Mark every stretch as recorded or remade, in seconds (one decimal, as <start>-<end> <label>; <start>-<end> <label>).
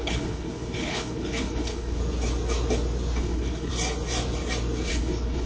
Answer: 0.0-2.0 remade; 2.0-3.2 recorded; 3.2-3.7 remade; 3.7-4.9 recorded; 4.9-5.5 remade